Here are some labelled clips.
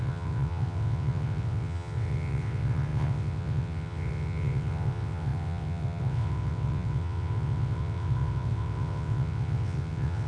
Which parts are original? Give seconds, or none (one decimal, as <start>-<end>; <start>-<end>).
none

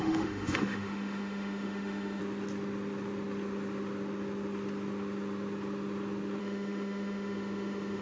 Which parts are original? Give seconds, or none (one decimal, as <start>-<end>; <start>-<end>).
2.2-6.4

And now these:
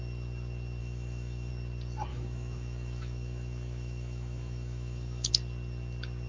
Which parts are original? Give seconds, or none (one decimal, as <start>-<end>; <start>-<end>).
0.0-0.8; 1.5-2.1; 5.3-6.3